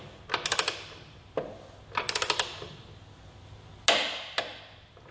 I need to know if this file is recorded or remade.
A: recorded